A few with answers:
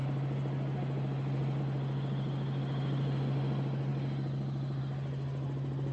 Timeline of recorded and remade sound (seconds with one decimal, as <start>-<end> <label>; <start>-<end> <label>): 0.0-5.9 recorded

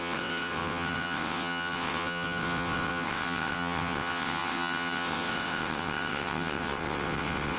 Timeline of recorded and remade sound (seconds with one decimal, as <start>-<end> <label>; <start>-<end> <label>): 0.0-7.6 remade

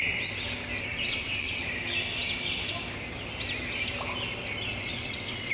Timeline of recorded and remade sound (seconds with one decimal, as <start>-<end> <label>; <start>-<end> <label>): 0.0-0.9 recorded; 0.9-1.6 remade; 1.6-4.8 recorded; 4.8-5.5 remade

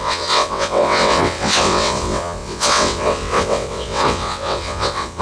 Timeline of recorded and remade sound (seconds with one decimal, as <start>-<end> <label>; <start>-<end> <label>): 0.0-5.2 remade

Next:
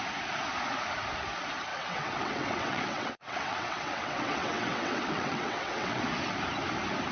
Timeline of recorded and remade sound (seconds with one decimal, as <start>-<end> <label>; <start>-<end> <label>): 0.0-1.7 recorded; 1.7-6.0 remade; 6.0-7.1 recorded

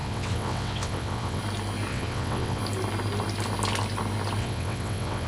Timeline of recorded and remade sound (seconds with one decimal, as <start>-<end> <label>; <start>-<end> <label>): 0.0-1.4 remade; 1.4-1.9 recorded; 1.9-2.6 remade; 2.6-4.4 recorded; 4.4-5.3 remade

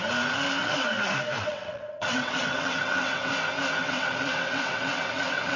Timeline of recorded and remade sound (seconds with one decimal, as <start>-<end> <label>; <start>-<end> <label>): 0.0-0.6 recorded; 0.6-3.3 remade; 3.3-3.8 recorded; 3.8-5.6 remade